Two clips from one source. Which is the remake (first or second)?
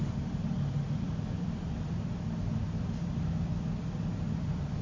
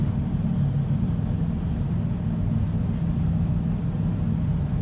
first